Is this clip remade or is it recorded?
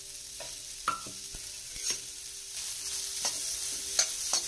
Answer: recorded